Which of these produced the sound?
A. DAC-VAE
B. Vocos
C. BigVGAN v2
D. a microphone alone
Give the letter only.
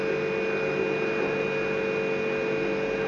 D